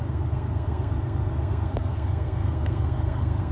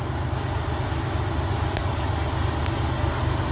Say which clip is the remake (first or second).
first